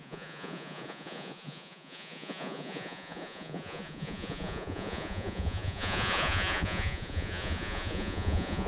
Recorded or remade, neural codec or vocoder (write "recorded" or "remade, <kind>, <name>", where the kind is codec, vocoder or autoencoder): remade, vocoder, Vocos